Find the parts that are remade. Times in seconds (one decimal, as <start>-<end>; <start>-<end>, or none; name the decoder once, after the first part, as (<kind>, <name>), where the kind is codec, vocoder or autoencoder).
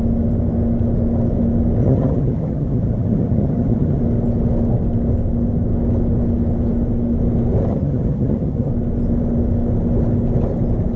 1.8-4.0 (vocoder, HiFi-GAN); 7.7-8.7